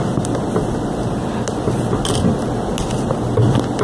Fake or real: real